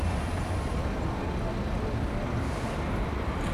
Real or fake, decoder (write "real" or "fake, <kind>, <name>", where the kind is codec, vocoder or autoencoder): real